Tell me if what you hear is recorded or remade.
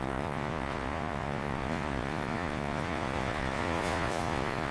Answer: remade